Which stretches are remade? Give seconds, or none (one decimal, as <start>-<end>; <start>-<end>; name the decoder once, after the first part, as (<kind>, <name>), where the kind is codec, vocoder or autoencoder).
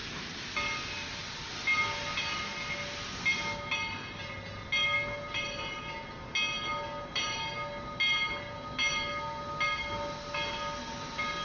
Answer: none